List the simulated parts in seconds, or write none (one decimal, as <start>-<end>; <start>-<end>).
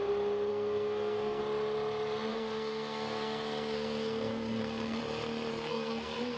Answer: 0.5-1.4; 2.3-5.0; 5.5-6.4